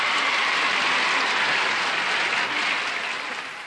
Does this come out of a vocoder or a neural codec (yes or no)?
no